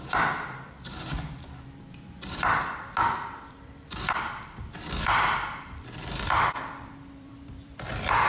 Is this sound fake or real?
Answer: fake